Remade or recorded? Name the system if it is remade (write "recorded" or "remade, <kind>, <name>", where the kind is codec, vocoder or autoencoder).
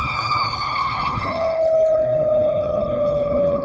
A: remade, codec, HILCodec